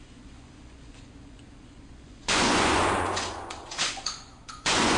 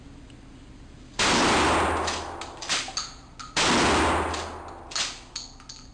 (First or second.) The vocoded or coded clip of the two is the first